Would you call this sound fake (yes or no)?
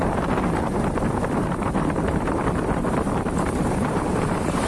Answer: yes